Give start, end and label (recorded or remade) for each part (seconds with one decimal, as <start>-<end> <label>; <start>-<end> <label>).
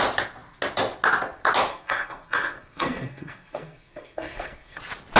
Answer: 0.0-1.7 recorded; 1.7-4.8 remade; 4.8-5.2 recorded